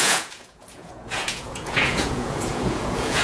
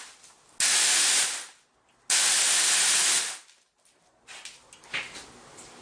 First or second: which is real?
second